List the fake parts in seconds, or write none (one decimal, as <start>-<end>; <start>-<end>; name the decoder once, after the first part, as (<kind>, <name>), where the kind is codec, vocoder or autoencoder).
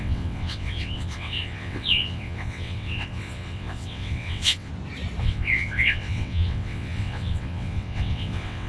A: 0.0-4.7 (vocoder, WaveNeXt); 5.2-8.7